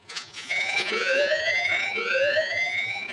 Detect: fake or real fake